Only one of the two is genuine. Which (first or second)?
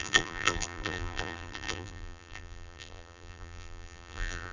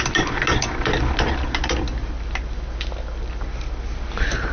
second